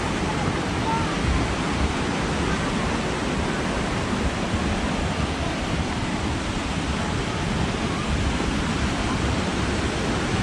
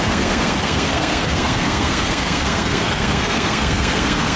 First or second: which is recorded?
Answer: first